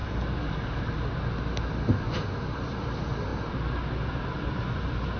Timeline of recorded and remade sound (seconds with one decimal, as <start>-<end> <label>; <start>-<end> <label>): 0.0-0.8 remade; 0.8-5.2 recorded